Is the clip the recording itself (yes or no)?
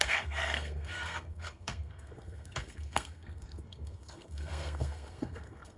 no